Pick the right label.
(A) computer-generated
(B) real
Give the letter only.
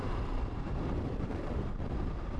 A